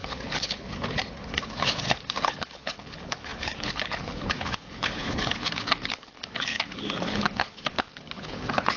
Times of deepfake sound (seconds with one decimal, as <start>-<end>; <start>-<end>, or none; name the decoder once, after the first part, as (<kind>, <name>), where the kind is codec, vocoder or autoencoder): 0.0-8.8 (codec, HILCodec)